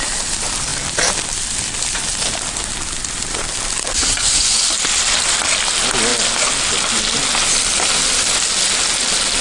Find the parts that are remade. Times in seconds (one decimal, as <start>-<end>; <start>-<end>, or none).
4.0-4.6